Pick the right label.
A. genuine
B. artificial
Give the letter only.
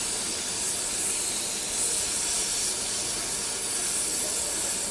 A